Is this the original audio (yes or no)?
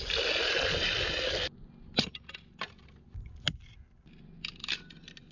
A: yes